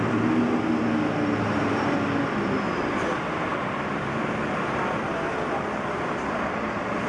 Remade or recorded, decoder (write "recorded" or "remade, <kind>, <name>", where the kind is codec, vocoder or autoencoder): recorded